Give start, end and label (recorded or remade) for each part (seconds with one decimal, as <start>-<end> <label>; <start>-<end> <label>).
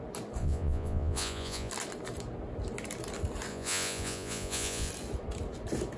0.0-0.4 recorded; 0.4-1.7 remade; 1.7-3.5 recorded; 3.5-4.9 remade; 4.9-6.0 recorded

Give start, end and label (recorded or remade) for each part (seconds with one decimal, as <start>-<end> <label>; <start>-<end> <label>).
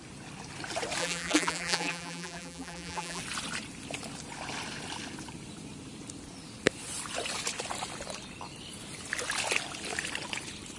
0.0-1.0 recorded; 1.0-3.2 remade; 3.2-10.8 recorded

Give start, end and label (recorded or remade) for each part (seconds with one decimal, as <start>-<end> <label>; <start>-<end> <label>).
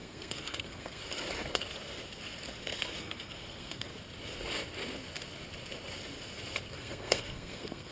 0.0-1.0 remade; 1.0-3.0 recorded; 3.0-3.9 remade; 3.9-6.7 recorded; 6.7-7.9 remade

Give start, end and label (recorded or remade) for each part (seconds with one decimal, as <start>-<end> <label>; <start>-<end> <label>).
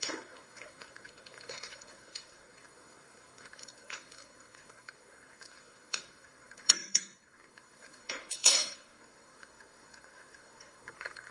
0.0-11.3 remade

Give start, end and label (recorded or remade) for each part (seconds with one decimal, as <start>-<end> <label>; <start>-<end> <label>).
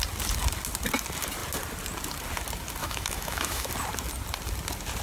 0.0-2.8 recorded; 2.8-3.7 remade; 3.7-5.0 recorded